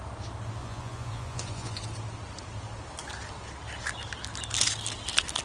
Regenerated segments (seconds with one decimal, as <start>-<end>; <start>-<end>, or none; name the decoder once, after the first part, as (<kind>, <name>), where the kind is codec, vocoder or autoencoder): 0.6-1.8 (vocoder, Vocos)